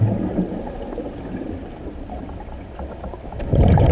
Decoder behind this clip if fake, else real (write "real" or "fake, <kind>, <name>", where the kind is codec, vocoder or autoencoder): real